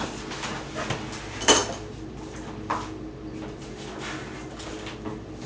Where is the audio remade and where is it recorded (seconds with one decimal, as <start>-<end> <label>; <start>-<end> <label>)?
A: 0.0-5.5 recorded